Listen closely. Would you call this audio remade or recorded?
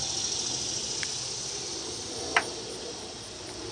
recorded